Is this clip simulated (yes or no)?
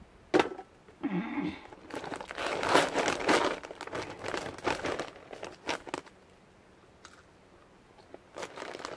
no